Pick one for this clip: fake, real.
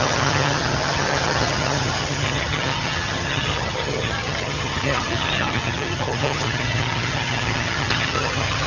fake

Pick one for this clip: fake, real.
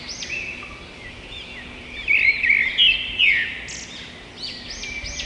real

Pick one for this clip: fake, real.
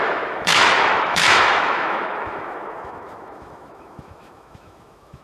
fake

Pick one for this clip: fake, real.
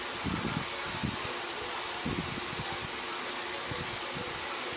real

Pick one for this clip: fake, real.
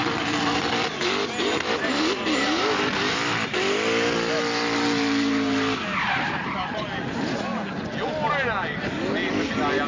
real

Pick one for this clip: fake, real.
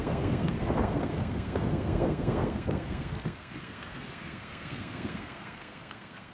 fake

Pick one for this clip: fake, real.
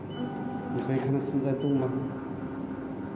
real